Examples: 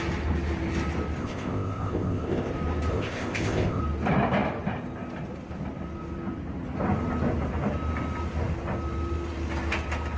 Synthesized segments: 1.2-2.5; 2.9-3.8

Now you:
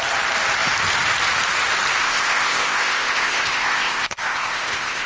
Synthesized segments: 2.0-5.1

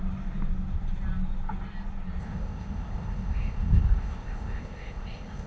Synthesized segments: 2.2-5.5

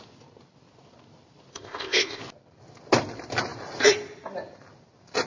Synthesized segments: 1.5-2.2

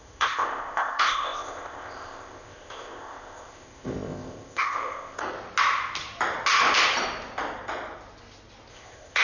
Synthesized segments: 0.0-5.2; 8.7-9.2

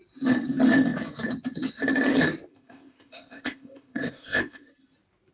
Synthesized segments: 2.5-4.7